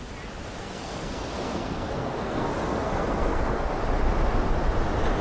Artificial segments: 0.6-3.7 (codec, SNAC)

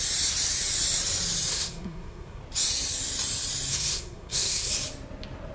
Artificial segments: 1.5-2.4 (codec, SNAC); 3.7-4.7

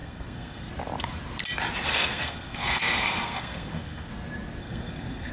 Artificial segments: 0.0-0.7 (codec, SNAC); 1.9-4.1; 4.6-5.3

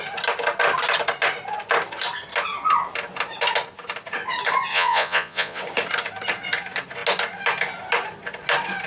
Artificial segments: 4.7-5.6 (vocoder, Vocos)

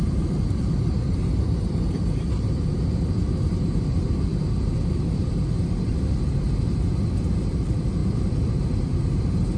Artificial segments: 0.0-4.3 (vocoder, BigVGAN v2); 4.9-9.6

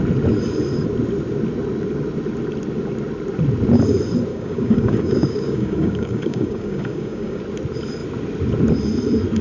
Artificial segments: 4.3-7.4 (codec, DAC)

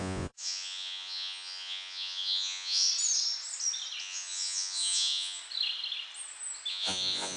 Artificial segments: 0.0-2.9 (vocoder, Vocos); 4.0-5.4; 6.7-7.4